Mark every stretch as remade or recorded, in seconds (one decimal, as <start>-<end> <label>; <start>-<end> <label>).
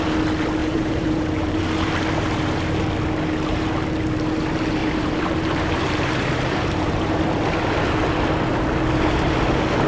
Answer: 0.0-0.6 recorded; 0.6-1.6 remade; 1.6-4.8 recorded; 4.8-7.2 remade; 7.2-9.9 recorded